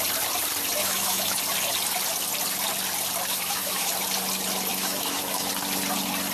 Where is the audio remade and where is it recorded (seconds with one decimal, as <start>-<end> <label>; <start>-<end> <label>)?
0.0-0.8 recorded; 0.8-1.4 remade; 1.4-3.3 recorded; 3.3-3.9 remade; 3.9-4.7 recorded; 4.7-5.5 remade; 5.5-6.3 recorded